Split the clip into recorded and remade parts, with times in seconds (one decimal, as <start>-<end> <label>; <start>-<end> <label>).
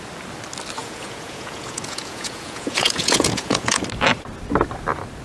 0.0-0.8 recorded; 0.8-3.8 remade; 3.8-5.2 recorded